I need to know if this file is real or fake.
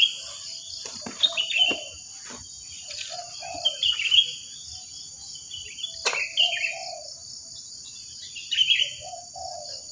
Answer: real